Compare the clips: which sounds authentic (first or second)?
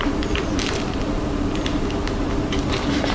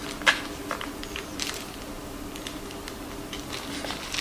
second